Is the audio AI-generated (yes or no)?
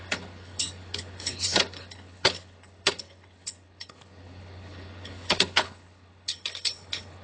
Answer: yes